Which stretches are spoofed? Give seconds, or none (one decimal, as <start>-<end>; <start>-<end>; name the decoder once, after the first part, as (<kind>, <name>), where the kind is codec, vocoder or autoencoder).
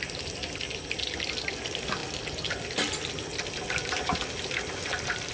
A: none